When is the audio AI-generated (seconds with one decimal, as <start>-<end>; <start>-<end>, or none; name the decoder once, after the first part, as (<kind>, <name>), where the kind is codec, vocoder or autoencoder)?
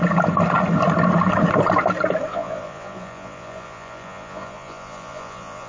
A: 2.3-5.7 (vocoder, Vocos)